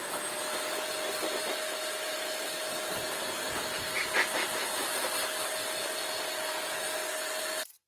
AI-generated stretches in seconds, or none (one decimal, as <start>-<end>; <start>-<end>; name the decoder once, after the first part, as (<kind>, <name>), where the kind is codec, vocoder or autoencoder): 1.2-2.6 (vocoder, BigVGAN v2)